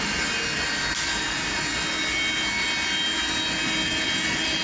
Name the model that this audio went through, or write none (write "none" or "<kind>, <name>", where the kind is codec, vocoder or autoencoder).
none